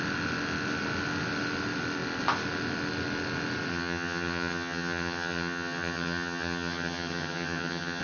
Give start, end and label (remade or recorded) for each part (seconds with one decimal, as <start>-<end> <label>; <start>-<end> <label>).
0.0-3.7 recorded; 3.7-8.0 remade